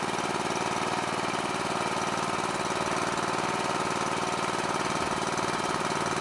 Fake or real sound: real